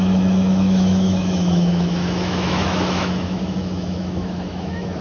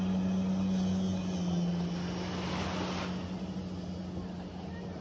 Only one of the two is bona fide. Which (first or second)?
second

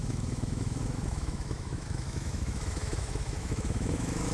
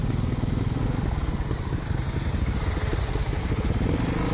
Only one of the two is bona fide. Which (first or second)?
second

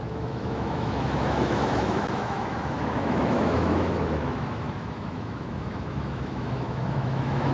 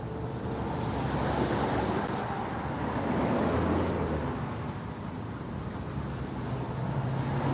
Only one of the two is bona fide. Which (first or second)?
second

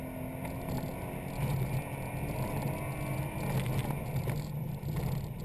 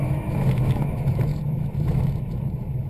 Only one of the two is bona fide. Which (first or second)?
first